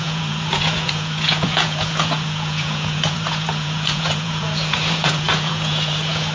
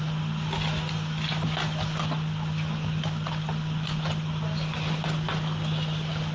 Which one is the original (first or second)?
second